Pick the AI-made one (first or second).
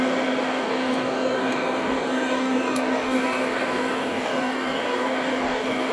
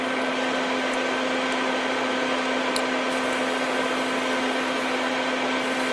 first